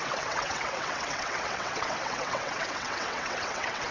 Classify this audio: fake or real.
fake